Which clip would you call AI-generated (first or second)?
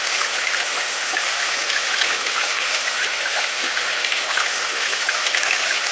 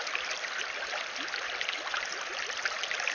first